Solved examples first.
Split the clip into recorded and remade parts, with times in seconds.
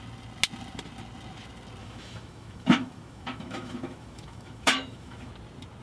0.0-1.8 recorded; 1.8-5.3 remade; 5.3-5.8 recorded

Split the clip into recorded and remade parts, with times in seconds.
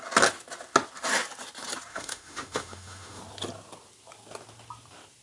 0.0-1.9 recorded; 1.9-3.2 remade; 3.2-5.2 recorded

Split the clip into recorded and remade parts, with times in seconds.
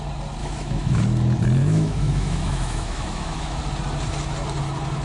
0.0-0.4 recorded; 0.4-1.0 remade; 1.0-1.6 recorded; 1.6-3.6 remade; 3.6-5.0 recorded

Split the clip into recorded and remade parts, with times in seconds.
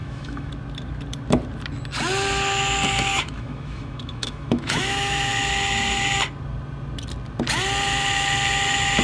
0.0-0.5 remade; 0.5-3.1 recorded; 3.1-5.3 remade; 5.3-9.0 recorded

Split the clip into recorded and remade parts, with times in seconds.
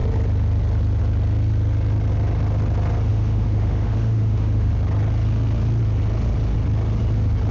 0.0-3.1 recorded; 3.1-4.7 remade; 4.7-7.5 recorded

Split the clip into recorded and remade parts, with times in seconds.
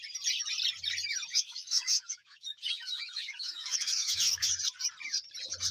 0.0-1.3 recorded; 1.3-4.5 remade; 4.5-5.7 recorded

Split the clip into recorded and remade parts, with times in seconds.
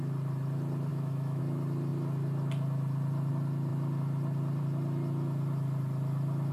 0.0-0.9 recorded; 0.9-1.4 remade; 1.4-6.5 recorded